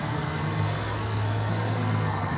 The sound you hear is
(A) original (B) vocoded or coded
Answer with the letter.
B